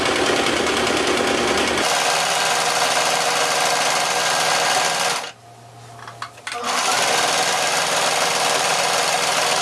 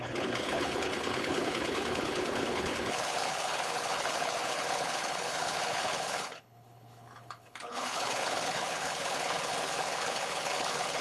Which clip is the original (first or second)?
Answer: first